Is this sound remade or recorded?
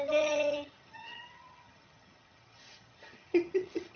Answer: remade